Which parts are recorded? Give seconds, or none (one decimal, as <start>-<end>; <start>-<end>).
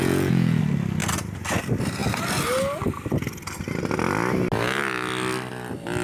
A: 0.6-6.0